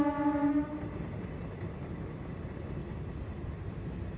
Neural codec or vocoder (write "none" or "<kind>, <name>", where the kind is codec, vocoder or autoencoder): none